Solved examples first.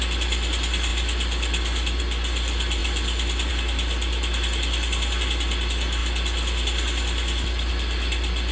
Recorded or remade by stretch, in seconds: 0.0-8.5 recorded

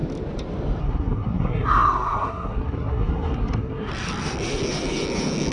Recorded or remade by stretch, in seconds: 0.0-0.8 recorded; 0.8-3.9 remade; 3.9-5.5 recorded

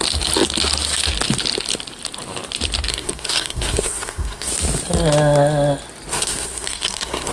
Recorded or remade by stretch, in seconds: 0.0-2.9 recorded; 2.9-4.5 remade; 4.5-6.1 recorded; 6.1-7.3 remade

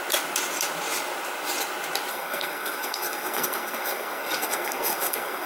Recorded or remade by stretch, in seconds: 0.0-2.1 recorded; 2.1-5.5 remade

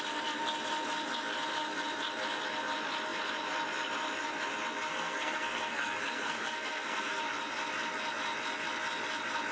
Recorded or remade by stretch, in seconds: 0.0-4.9 recorded; 4.9-7.2 remade; 7.2-9.5 recorded

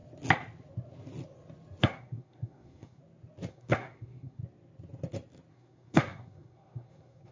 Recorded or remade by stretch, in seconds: 0.0-1.8 recorded; 1.8-3.0 remade; 3.0-3.5 recorded; 3.5-4.4 remade; 4.4-5.5 recorded; 5.5-7.3 remade

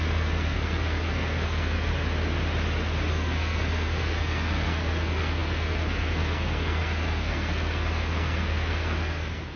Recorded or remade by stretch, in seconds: 0.0-1.9 remade; 1.9-3.1 recorded; 3.1-9.6 remade